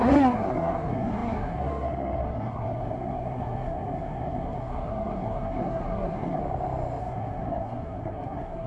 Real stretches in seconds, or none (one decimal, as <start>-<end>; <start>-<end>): 6.4-7.0

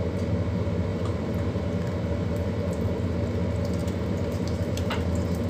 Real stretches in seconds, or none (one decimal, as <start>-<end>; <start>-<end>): 0.0-0.9; 3.1-3.8; 4.9-5.5

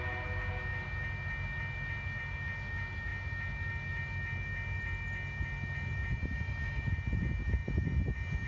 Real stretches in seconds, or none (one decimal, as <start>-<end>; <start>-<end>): 0.0-6.2; 6.8-8.5